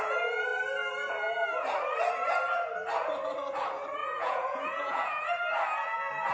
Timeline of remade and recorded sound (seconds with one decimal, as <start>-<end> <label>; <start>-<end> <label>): 0.0-4.0 recorded; 4.0-5.3 remade; 5.3-6.3 recorded